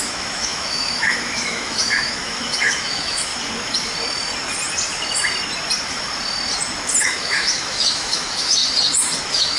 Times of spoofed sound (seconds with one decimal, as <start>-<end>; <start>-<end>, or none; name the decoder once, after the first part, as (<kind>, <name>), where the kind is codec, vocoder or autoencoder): 0.0-3.3 (autoencoder, DAC-VAE); 7.0-8.6; 9.2-9.6